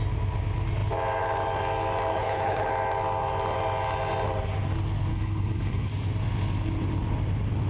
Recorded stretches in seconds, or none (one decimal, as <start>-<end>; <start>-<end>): 0.0-2.1; 2.7-5.1; 5.9-7.7